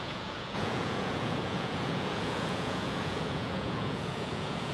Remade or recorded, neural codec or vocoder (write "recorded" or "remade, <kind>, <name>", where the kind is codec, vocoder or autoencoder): remade, vocoder, Vocos